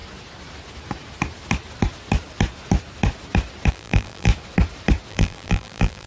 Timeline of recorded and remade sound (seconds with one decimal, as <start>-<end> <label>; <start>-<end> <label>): 0.0-3.7 recorded; 3.7-4.3 remade; 4.3-5.1 recorded; 5.1-6.1 remade